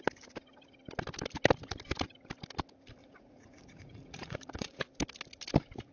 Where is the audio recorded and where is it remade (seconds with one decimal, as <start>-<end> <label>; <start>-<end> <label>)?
0.0-3.0 recorded; 3.0-4.8 remade; 4.8-5.9 recorded

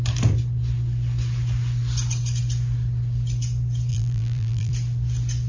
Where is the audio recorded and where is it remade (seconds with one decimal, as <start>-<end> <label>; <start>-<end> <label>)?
0.0-3.9 recorded; 3.9-4.7 remade; 4.7-5.5 recorded

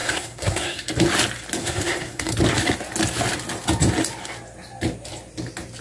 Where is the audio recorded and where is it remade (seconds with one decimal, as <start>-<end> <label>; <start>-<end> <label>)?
0.0-0.9 remade; 0.9-1.6 recorded; 1.6-2.3 remade; 2.3-5.8 recorded